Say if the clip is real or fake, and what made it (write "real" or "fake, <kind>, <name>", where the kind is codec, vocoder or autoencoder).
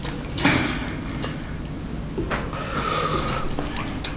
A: real